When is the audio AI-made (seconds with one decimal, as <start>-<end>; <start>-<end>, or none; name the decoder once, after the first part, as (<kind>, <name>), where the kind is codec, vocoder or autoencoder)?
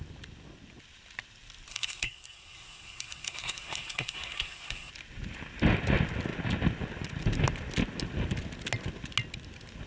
1.7-4.9 (codec, SNAC)